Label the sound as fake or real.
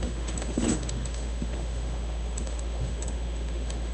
fake